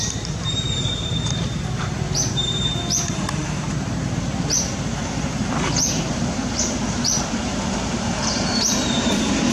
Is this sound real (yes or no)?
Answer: no